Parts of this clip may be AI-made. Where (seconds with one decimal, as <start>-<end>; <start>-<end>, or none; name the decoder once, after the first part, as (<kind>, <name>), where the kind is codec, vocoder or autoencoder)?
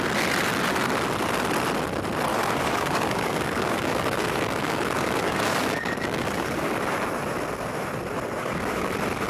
2.3-6.8 (codec, DAC); 8.4-8.9